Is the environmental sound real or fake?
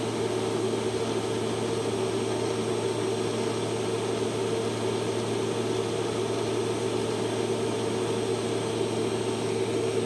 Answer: real